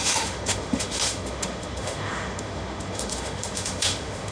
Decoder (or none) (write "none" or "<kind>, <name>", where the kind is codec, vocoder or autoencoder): autoencoder, DAC-VAE